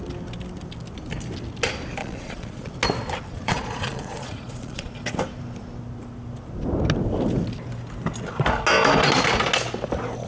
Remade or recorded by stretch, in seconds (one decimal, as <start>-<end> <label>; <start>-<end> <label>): 0.0-2.0 recorded; 2.0-2.7 remade; 2.7-3.3 recorded; 3.3-4.9 remade; 4.9-10.3 recorded